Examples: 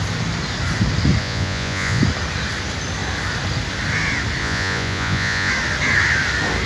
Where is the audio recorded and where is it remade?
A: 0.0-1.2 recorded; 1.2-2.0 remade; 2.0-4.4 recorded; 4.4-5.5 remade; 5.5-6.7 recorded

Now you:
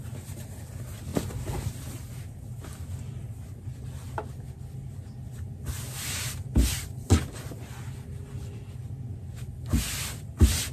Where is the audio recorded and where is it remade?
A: 0.0-10.7 recorded

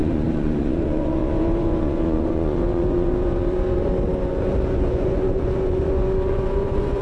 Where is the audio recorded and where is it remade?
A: 0.0-7.0 remade

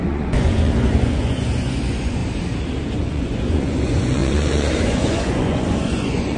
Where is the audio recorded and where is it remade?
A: 0.0-2.2 remade; 2.2-3.0 recorded; 3.0-6.4 remade

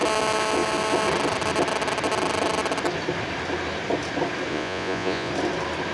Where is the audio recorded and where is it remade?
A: 0.0-4.5 recorded; 4.5-5.3 remade; 5.3-5.9 recorded

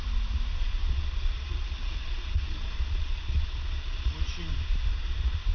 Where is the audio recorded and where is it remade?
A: 0.0-0.8 recorded; 0.8-4.1 remade; 4.1-5.5 recorded

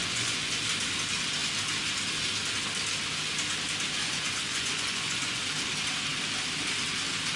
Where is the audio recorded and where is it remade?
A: 0.0-0.6 remade; 0.6-4.0 recorded; 4.0-5.4 remade; 5.4-7.4 recorded

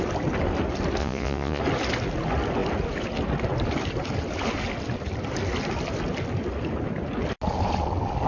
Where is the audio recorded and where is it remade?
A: 0.0-1.0 recorded; 1.0-1.6 remade; 1.6-8.3 recorded